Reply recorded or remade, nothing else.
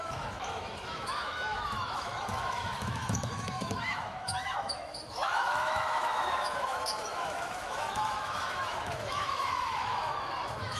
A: remade